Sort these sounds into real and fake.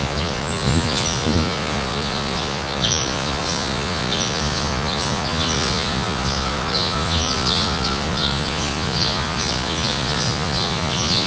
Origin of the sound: fake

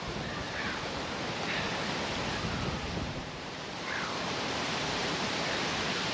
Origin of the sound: fake